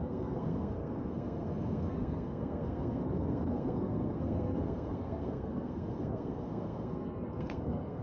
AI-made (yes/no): yes